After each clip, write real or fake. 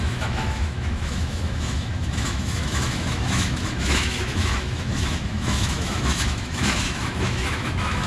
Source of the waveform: fake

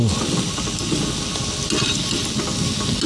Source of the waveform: real